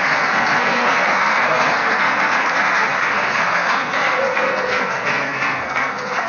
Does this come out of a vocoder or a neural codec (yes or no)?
yes